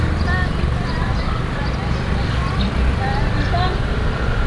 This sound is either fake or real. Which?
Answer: real